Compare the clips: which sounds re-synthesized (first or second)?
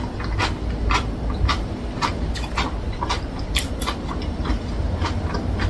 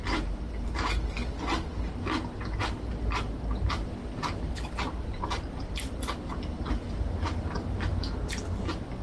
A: first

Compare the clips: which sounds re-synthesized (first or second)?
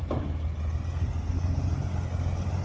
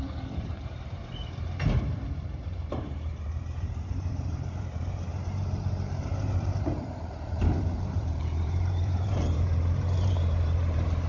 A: second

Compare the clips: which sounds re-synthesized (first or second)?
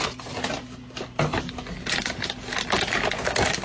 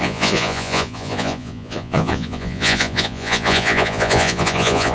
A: second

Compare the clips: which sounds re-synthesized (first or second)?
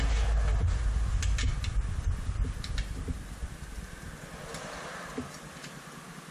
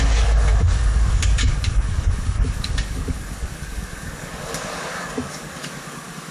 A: second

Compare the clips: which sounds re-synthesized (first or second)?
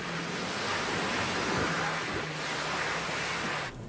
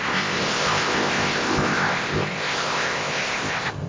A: second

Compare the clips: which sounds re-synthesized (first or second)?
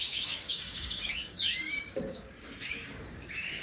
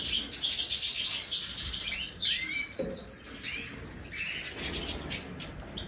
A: first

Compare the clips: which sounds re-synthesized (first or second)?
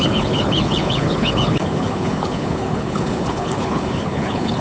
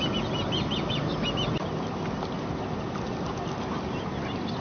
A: first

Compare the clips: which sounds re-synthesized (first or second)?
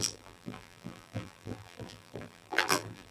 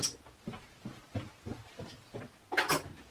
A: first